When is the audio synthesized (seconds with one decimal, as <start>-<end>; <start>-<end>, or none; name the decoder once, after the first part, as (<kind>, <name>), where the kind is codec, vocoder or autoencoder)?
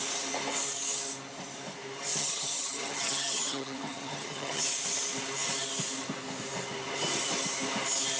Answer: 2.1-4.6 (vocoder, HiFi-GAN)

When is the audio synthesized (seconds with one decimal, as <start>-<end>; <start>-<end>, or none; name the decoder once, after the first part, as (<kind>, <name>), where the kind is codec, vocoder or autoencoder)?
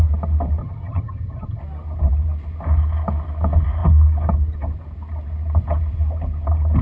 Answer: 0.6-1.6 (vocoder, HiFi-GAN)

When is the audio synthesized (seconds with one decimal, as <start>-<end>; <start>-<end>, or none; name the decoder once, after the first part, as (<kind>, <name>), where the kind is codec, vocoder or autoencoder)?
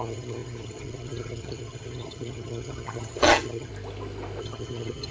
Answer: 0.0-3.7 (vocoder, HiFi-GAN); 4.4-5.1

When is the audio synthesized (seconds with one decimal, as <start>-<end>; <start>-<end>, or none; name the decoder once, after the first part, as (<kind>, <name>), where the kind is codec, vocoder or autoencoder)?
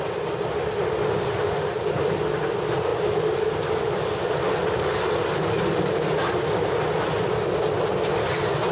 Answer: none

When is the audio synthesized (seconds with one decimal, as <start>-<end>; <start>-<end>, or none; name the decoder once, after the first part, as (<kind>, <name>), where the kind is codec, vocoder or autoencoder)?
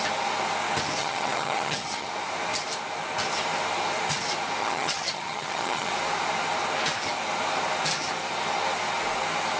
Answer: 1.0-2.1 (vocoder, HiFi-GAN); 4.6-5.9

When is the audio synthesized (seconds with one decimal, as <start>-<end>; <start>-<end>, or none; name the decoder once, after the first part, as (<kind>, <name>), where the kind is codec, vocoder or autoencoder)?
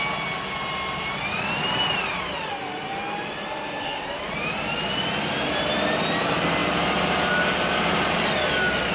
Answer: none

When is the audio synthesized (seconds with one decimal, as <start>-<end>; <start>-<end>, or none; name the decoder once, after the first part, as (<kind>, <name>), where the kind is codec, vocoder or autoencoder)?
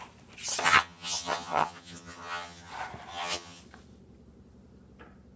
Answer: 0.6-2.7 (vocoder, HiFi-GAN); 3.1-3.6